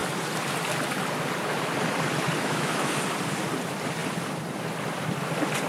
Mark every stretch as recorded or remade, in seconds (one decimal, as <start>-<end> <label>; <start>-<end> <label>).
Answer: 0.0-2.4 recorded; 2.4-2.9 remade; 2.9-5.7 recorded